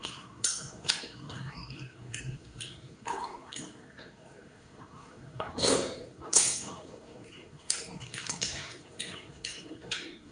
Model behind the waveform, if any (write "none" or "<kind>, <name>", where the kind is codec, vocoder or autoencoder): codec, SNAC